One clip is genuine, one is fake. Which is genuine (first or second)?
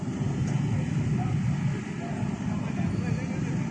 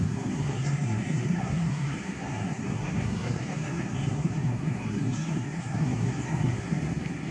first